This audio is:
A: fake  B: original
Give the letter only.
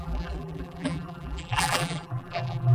A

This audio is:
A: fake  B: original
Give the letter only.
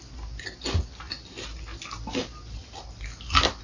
B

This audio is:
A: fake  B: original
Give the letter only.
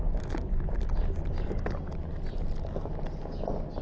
B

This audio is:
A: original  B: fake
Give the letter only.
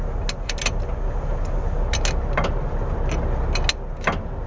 A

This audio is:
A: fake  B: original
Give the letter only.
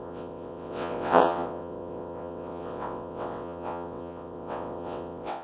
A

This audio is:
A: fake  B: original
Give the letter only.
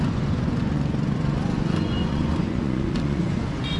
A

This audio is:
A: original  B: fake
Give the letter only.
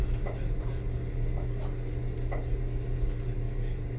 A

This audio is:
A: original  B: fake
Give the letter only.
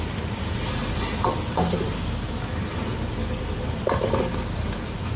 A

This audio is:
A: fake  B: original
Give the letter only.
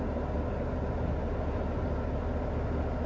B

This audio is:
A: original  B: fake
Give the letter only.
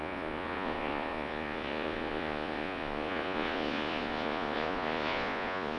B